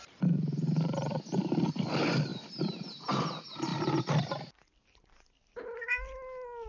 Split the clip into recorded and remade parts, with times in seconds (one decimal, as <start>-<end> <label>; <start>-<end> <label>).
0.0-2.3 recorded; 2.3-2.9 remade; 2.9-3.7 recorded; 3.7-4.4 remade; 4.4-6.7 recorded